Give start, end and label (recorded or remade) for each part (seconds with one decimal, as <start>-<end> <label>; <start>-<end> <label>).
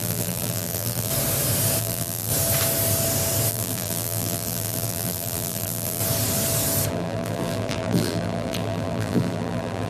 0.0-1.1 remade; 1.1-1.8 recorded; 1.8-2.3 remade; 2.3-3.5 recorded; 3.5-6.0 remade; 6.0-6.9 recorded; 6.9-9.9 remade